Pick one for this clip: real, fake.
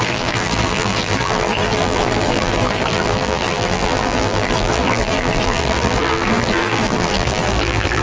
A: fake